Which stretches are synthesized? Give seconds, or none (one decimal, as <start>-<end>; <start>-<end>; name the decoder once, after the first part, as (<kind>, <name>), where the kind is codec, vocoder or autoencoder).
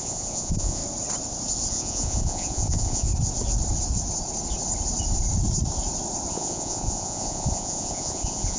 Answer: 0.0-0.8 (vocoder, Vocos); 1.7-3.1; 6.3-8.6